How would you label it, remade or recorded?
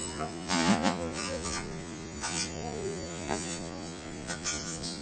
remade